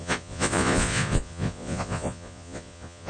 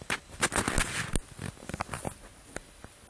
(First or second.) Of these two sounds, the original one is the second